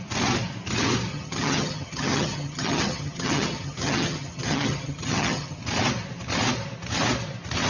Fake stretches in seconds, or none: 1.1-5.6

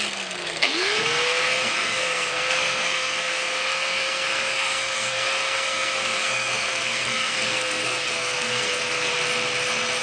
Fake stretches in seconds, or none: 0.0-9.1

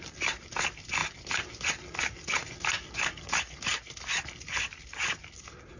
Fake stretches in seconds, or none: none